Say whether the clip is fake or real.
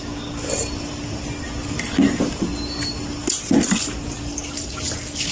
real